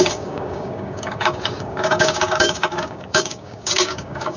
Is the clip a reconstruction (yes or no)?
yes